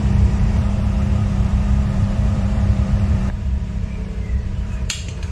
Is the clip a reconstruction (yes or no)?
yes